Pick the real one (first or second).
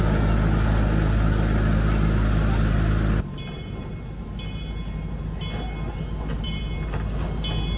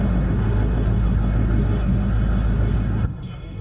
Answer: first